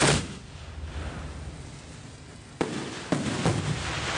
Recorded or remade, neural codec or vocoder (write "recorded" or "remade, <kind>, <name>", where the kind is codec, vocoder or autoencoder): recorded